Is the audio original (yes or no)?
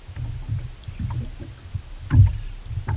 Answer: yes